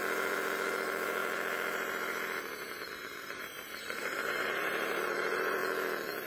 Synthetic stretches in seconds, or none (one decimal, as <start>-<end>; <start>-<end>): 0.0-5.6